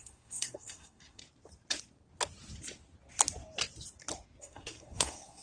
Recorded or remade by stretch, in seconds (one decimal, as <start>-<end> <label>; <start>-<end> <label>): 0.0-1.2 remade; 1.2-4.4 recorded; 4.4-5.4 remade